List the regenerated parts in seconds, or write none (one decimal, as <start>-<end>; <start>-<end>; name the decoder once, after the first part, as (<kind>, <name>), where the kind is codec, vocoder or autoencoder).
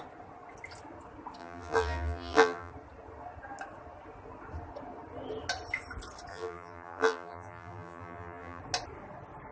1.4-2.7 (vocoder, BigVGAN v2); 6.3-8.6